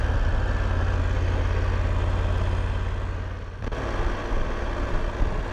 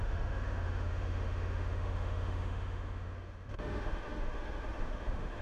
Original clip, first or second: first